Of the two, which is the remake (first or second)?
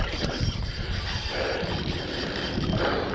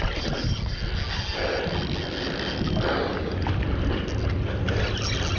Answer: first